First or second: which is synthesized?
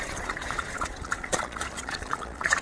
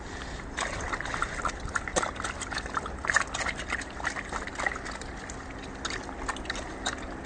first